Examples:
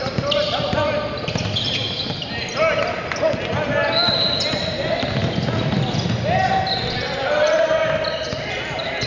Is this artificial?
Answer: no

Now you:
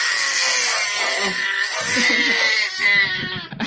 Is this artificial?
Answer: no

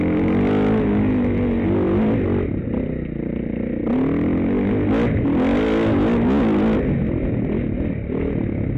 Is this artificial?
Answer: no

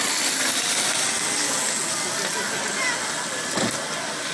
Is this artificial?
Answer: no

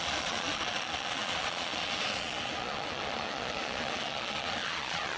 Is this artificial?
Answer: yes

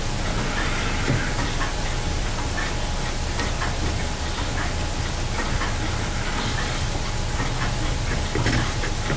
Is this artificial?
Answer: no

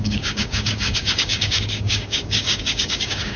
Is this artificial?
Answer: yes